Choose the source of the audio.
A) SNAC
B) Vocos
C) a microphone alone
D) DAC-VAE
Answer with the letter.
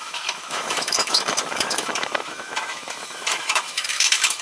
D